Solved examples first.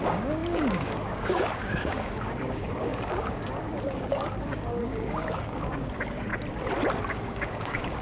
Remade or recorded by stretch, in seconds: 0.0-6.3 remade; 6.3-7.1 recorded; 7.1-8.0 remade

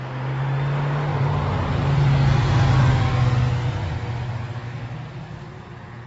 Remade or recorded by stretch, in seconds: 0.0-5.5 recorded; 5.5-6.1 remade

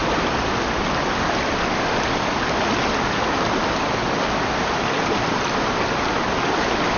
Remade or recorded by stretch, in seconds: 0.0-7.0 recorded

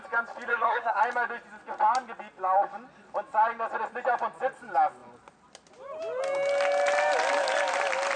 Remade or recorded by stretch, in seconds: 0.0-0.5 recorded; 0.5-1.0 remade; 1.0-8.2 recorded

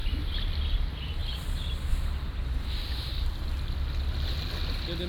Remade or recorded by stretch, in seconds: 0.0-5.1 recorded

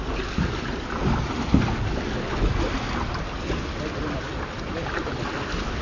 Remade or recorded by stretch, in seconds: 0.0-5.8 recorded